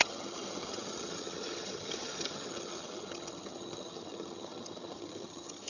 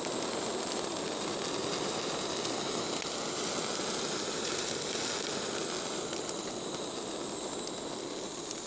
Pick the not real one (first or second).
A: first